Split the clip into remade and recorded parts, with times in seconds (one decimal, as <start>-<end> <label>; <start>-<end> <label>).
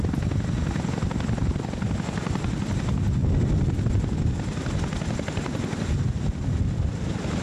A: 0.0-7.4 recorded